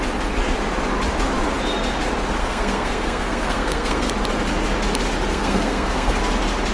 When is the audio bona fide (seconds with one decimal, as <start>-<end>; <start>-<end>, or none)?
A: 0.0-2.4; 4.1-5.3; 6.2-6.7